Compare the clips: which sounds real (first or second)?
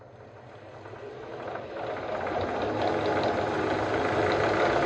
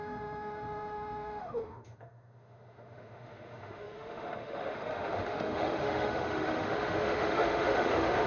first